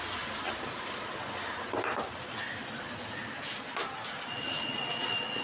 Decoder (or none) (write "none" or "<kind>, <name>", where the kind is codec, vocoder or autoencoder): none